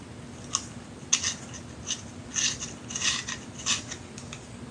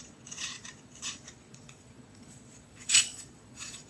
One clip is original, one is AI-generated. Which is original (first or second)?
first